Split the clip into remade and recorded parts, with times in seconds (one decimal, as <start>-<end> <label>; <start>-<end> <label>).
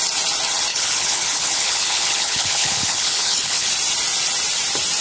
0.0-0.7 recorded; 0.7-3.7 remade; 3.7-5.0 recorded